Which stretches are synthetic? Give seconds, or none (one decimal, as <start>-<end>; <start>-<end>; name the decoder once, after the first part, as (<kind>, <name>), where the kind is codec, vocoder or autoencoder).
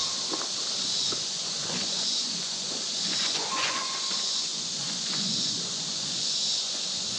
0.8-7.2 (vocoder, Vocos)